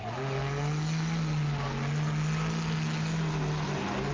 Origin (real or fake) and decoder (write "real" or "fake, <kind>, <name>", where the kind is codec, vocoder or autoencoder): real